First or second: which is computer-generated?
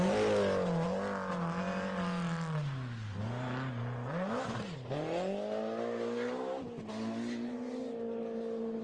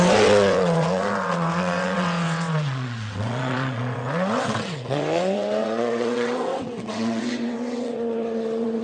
second